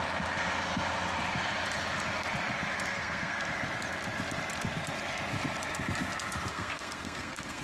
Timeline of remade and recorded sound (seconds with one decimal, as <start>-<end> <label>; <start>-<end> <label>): 0.0-2.9 recorded; 2.9-3.5 remade; 3.5-6.5 recorded; 6.5-7.6 remade